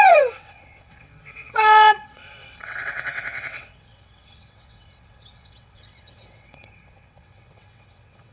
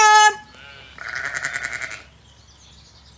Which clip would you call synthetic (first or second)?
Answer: first